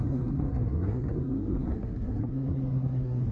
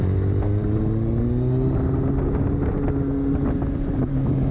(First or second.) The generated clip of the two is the first